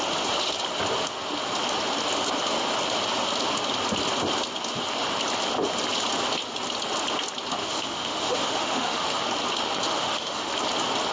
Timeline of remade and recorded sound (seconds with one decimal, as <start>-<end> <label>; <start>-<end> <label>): 0.0-7.6 recorded; 7.6-9.2 remade; 9.2-9.9 recorded; 9.9-10.5 remade; 10.5-11.1 recorded